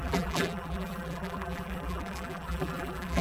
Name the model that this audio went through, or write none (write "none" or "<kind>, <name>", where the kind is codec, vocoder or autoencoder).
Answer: vocoder, BigVGAN v2